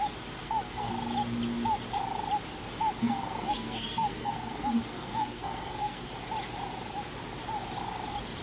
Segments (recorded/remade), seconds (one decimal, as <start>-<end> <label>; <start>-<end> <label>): 0.0-0.4 recorded; 0.4-0.9 remade; 0.9-3.0 recorded; 3.0-6.1 remade; 6.1-8.4 recorded